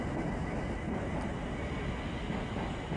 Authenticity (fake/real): real